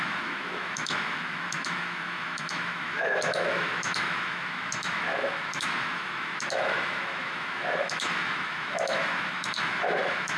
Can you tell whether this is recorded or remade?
remade